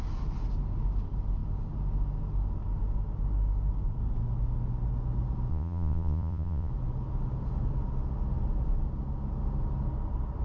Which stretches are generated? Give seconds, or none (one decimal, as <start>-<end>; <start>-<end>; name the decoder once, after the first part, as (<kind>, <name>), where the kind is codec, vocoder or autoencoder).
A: 5.5-6.7 (vocoder, Vocos)